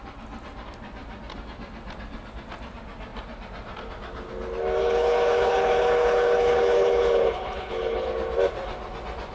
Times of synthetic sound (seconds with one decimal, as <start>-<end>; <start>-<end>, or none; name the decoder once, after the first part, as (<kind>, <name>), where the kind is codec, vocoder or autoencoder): 4.8-8.1 (codec, HILCodec)